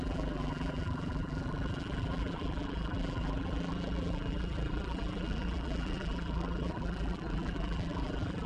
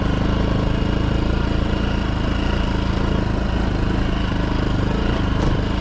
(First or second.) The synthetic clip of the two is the first